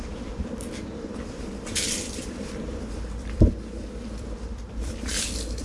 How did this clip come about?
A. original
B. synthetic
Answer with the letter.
B